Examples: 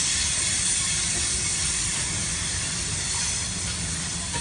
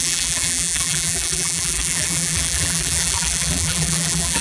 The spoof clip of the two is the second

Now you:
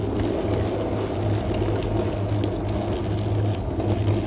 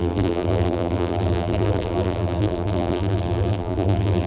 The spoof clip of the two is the second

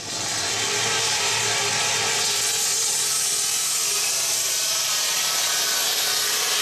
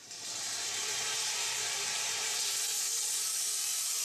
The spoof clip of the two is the second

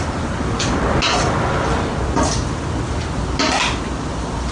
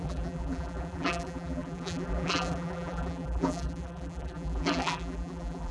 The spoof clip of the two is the second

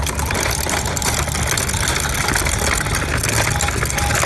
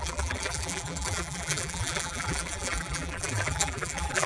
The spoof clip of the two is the second